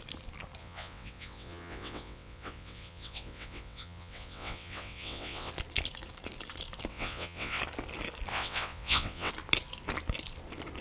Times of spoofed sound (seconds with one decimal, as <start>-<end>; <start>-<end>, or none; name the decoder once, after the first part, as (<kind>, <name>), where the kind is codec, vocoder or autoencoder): 0.6-5.5 (vocoder, WaveNeXt); 6.9-7.6; 8.3-9.3